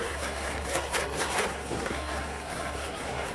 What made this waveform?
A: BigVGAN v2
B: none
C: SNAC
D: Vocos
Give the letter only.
C